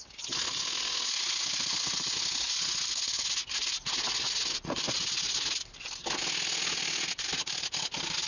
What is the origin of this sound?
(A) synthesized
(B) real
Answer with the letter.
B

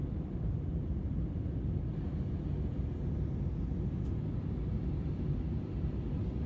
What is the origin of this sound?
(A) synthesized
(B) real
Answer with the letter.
B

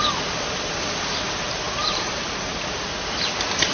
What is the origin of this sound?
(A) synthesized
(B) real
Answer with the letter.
B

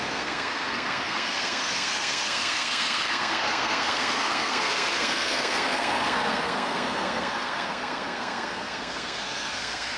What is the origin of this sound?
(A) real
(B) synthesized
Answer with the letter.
B